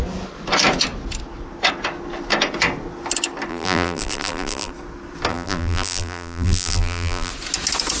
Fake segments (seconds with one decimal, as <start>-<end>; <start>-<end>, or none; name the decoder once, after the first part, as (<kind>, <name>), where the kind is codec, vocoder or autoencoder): 3.5-4.7 (vocoder, BigVGAN v2); 5.3-7.3